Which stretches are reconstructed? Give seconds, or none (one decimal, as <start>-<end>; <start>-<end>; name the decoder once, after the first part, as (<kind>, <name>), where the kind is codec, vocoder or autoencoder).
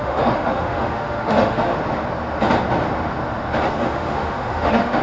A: 0.0-1.8 (autoencoder, DAC-VAE); 3.7-5.0